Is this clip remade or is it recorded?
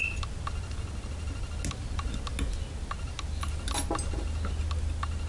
recorded